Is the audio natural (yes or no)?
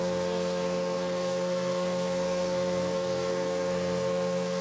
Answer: no